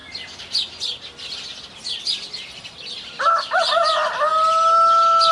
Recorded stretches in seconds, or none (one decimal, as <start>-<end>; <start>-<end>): 0.0-5.3